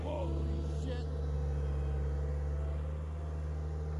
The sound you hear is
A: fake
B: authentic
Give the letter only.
B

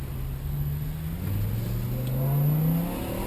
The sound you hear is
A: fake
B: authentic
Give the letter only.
B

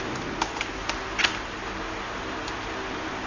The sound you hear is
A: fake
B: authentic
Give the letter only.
B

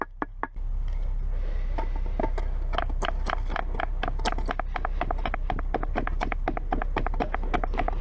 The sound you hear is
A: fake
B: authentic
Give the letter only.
B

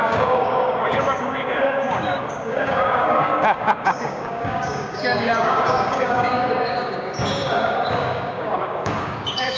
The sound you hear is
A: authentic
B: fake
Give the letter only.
B